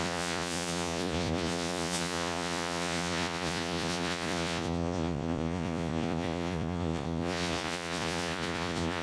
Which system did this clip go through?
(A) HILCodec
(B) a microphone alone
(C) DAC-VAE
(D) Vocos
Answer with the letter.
D